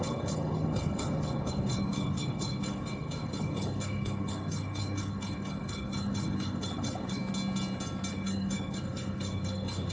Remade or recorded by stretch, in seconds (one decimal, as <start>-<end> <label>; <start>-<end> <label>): 0.0-7.2 remade; 7.2-8.1 recorded; 8.1-9.9 remade